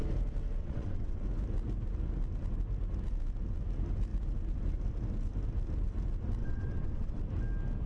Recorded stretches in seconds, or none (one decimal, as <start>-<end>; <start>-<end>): 0.0-0.6; 1.2-6.4; 7.2-7.9